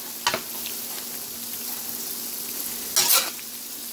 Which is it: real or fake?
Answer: real